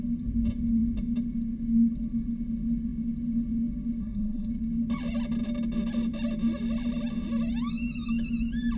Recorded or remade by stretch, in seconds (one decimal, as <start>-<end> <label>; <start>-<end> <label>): 0.0-4.0 recorded; 4.0-4.5 remade; 4.5-8.8 recorded